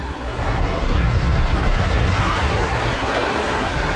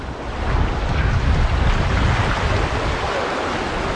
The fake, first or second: first